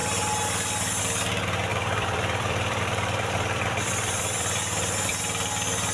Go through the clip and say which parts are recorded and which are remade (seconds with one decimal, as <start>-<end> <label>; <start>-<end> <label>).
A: 0.0-1.7 recorded; 1.7-5.2 remade; 5.2-5.9 recorded